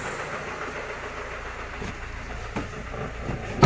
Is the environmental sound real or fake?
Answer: real